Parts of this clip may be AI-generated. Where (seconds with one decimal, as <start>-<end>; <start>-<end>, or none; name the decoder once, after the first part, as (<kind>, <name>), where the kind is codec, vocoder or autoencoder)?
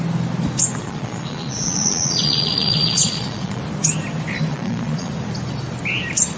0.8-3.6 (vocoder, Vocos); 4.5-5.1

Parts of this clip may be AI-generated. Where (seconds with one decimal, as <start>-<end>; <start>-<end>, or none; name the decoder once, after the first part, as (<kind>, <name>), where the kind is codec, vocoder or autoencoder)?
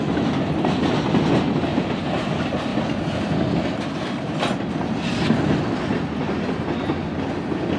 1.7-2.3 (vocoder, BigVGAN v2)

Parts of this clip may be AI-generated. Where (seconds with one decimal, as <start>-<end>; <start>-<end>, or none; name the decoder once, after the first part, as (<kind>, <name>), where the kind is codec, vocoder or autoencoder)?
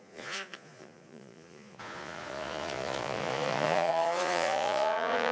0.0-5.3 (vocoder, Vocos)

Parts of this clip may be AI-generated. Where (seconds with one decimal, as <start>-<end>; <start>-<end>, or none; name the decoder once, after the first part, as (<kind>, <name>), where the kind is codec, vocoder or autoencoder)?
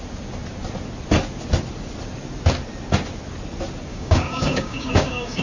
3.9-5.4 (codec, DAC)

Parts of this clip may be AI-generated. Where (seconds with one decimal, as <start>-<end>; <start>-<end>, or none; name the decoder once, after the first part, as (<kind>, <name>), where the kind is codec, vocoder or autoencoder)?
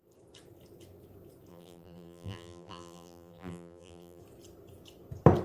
1.5-4.2 (vocoder, BigVGAN v2)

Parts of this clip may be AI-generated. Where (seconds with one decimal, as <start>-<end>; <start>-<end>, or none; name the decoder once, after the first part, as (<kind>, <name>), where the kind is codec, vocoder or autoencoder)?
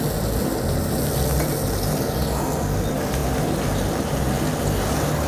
none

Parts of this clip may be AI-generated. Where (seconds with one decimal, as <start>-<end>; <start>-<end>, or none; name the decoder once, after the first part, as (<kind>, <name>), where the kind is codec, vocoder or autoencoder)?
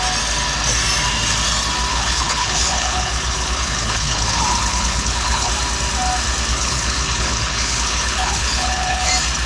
1.9-5.5 (codec, HILCodec); 6.5-9.1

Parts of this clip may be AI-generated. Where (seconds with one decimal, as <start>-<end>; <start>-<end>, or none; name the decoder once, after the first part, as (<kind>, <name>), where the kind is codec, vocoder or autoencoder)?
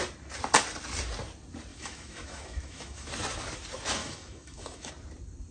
1.7-3.1 (autoencoder, DAC-VAE); 4.0-4.9